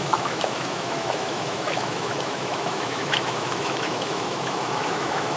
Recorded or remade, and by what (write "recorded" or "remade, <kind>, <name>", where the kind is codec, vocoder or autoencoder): remade, autoencoder, DAC-VAE